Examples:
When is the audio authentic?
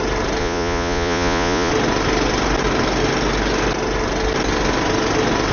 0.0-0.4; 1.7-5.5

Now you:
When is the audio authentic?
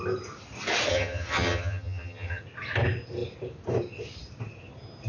0.0-0.9; 2.4-5.1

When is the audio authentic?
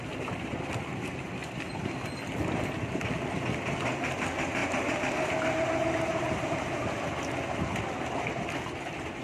0.0-9.2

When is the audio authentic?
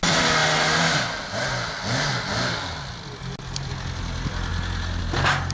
0.0-5.5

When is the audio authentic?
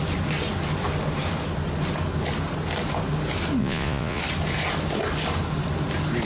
0.0-3.6; 4.2-6.3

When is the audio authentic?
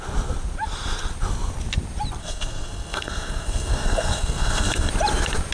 0.0-2.2; 4.9-5.5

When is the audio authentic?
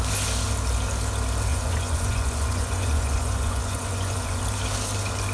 0.0-1.5; 4.4-5.3